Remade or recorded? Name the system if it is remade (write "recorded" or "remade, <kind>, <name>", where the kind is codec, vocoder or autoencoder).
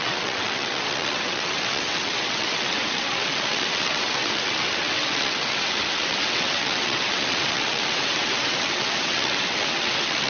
remade, vocoder, WaveNeXt